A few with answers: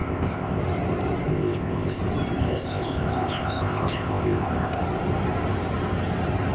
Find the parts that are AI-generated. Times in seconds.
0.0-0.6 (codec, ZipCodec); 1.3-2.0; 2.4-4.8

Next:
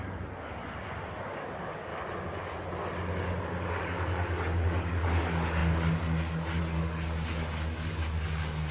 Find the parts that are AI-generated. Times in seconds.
0.0-0.6 (codec, DAC); 1.2-1.9; 3.4-8.7

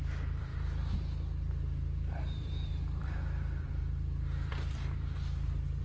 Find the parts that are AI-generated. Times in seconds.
0.0-5.8 (vocoder, BigVGAN v2)

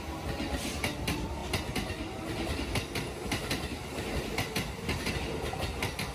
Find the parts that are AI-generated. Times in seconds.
none

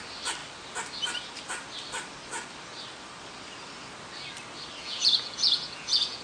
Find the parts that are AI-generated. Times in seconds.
4.8-6.2 (vocoder, Vocos)

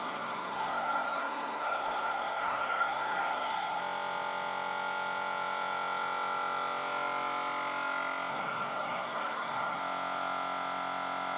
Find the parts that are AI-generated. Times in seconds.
0.0-3.8 (codec, SNAC); 8.3-9.8